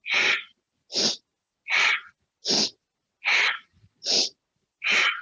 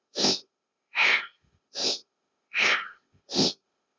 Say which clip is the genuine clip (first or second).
first